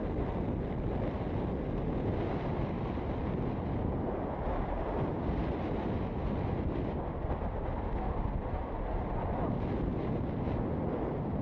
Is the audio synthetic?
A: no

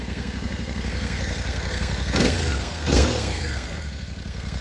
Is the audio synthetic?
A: yes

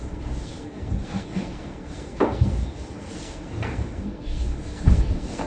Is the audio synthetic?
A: yes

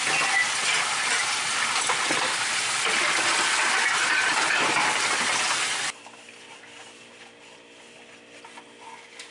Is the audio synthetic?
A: no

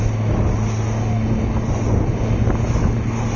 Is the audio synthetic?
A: no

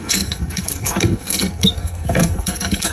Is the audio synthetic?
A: yes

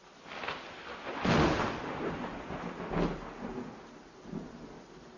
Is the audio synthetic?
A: no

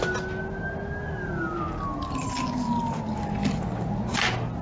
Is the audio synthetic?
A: no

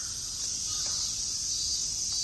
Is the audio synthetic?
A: no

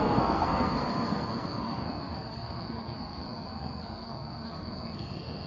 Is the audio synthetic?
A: yes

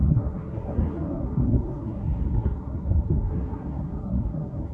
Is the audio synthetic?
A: yes